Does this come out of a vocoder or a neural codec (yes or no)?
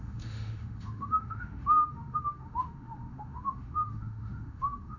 yes